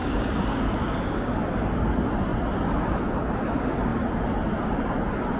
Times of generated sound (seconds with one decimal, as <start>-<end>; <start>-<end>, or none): 0.0-1.3